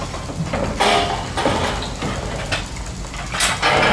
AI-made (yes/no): no